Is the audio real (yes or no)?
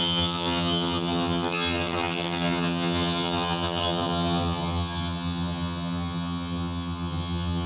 no